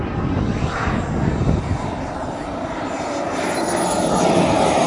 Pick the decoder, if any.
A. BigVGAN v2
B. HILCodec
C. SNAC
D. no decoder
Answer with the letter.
D